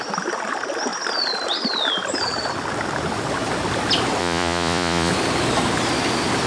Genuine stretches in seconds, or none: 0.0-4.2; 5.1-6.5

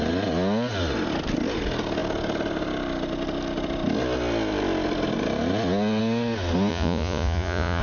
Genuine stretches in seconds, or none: 0.0-6.7